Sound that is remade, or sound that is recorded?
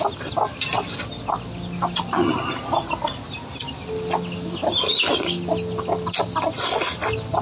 recorded